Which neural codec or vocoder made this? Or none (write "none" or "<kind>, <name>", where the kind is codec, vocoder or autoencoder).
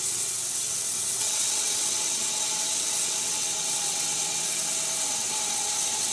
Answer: vocoder, WaveNeXt